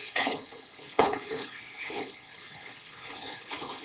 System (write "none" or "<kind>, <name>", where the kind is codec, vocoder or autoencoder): codec, HILCodec